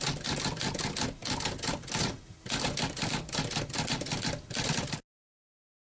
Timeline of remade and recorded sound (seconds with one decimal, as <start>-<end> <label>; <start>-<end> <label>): 0.0-6.0 recorded